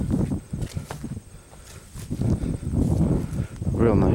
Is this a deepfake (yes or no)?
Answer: no